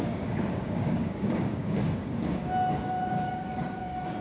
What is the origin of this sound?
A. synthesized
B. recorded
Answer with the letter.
A